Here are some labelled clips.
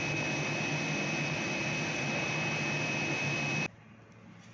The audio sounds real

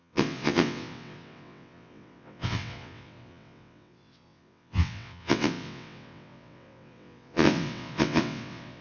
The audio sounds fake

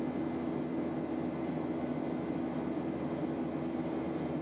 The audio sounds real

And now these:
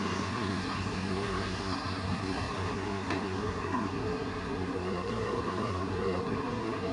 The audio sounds fake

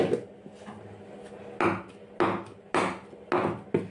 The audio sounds real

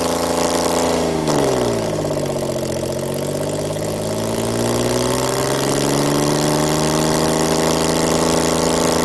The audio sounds real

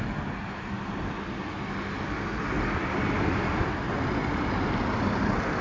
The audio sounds real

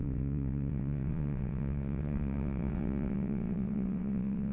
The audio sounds fake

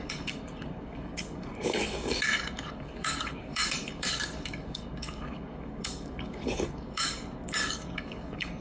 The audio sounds fake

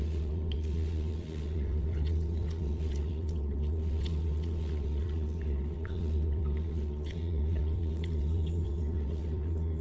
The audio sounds fake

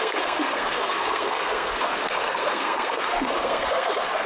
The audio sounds fake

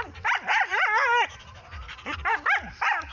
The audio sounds real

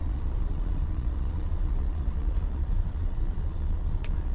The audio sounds fake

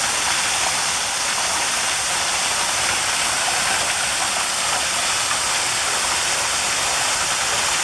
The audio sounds real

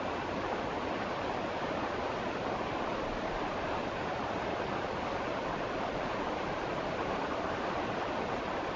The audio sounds real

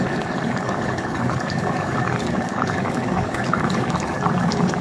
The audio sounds fake